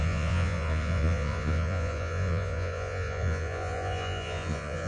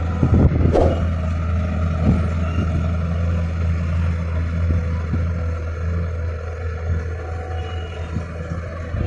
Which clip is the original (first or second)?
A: second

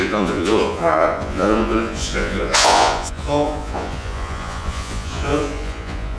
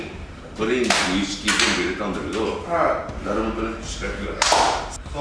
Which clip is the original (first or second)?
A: second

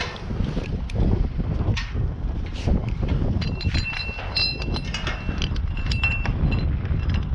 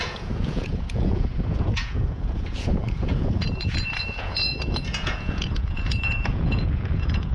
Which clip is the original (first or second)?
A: first